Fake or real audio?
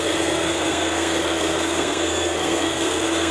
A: fake